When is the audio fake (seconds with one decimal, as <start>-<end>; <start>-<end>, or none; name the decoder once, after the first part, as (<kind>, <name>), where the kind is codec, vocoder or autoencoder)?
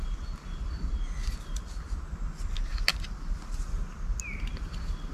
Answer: none